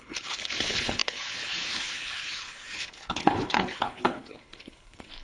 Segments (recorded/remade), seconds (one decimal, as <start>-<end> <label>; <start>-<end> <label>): 0.0-5.2 remade